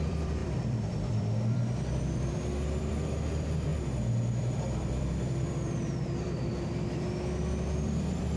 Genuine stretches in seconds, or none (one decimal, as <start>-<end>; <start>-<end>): 3.7-4.4

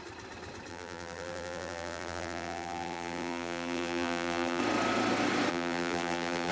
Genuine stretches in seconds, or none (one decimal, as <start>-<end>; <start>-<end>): 0.0-0.7; 4.6-5.5

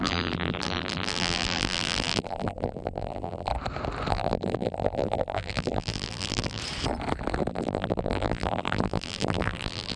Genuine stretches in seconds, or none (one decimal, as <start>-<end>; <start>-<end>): 3.5-4.1; 6.6-7.5

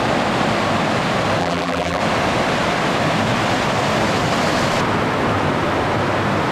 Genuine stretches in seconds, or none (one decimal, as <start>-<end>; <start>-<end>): 0.0-1.4; 2.0-6.5

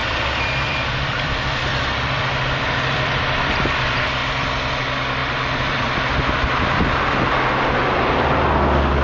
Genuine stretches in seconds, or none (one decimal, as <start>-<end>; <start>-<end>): 3.6-4.2; 4.7-5.2; 6.0-9.0